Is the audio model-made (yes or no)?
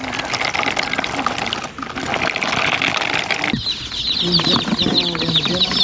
no